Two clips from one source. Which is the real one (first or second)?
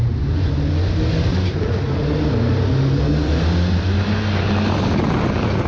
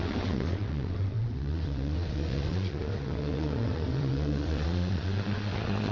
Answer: first